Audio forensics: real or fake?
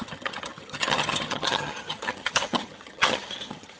fake